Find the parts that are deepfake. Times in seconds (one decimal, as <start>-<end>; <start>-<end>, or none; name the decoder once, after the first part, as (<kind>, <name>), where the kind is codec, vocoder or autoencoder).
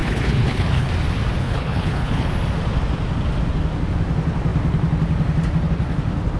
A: 0.0-0.9 (codec, HILCodec); 1.4-2.3